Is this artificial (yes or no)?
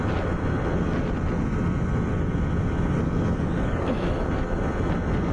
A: no